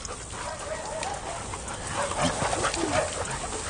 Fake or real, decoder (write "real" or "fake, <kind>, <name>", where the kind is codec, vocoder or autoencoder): real